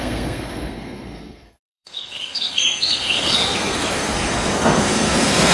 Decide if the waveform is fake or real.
fake